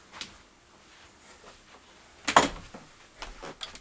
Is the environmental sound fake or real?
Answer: real